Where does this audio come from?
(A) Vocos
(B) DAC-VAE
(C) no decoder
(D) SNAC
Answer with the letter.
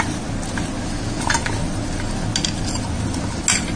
C